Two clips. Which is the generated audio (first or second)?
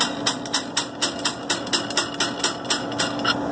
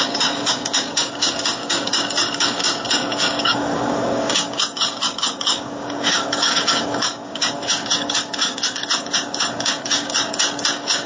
second